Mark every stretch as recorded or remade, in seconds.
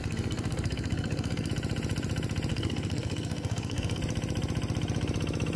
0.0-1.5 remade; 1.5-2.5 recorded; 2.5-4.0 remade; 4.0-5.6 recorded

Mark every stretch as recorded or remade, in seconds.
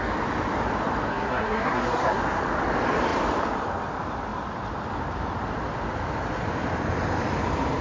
0.0-1.1 recorded; 1.1-2.2 remade; 2.2-7.8 recorded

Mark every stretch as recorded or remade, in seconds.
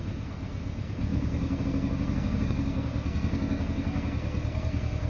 0.0-5.1 remade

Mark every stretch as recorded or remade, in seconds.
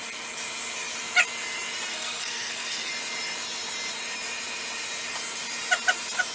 0.0-1.9 recorded; 1.9-2.9 remade; 2.9-6.3 recorded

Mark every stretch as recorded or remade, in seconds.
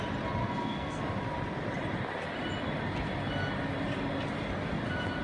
0.0-0.4 recorded; 0.4-1.0 remade; 1.0-5.2 recorded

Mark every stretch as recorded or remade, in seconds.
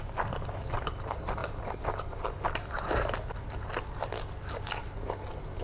0.0-5.6 recorded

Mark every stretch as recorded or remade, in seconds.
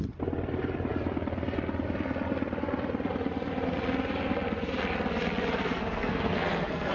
0.0-5.6 recorded; 5.6-6.9 remade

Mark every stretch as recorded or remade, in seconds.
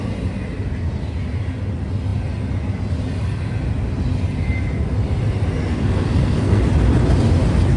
0.0-5.7 recorded; 5.7-6.6 remade; 6.6-7.8 recorded